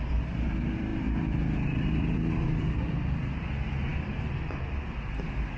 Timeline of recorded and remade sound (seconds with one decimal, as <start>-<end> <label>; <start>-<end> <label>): 0.0-0.9 recorded; 0.9-2.6 remade; 2.6-5.6 recorded